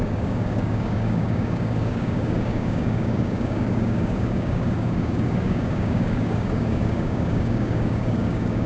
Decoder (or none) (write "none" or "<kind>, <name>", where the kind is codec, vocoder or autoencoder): codec, DAC